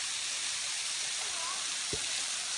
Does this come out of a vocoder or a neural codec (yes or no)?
no